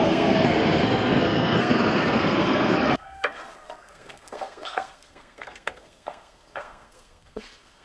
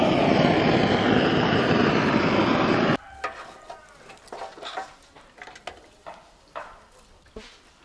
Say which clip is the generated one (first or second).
first